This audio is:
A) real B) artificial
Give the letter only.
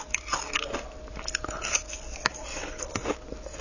A